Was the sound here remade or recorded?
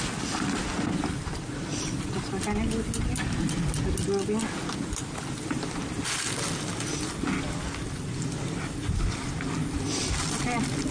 recorded